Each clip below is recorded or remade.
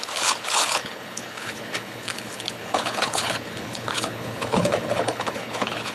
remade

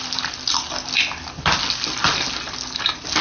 recorded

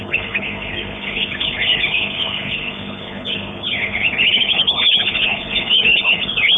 remade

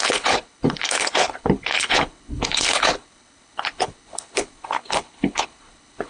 remade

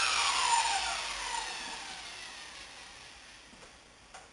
recorded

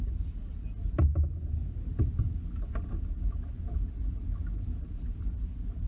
recorded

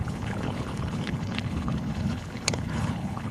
remade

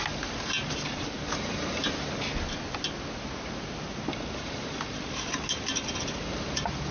recorded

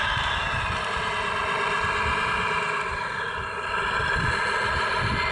recorded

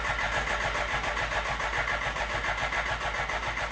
recorded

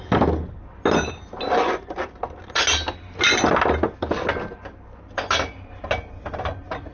recorded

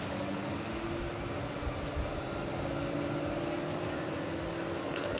recorded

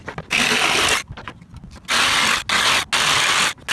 recorded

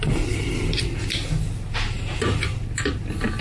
recorded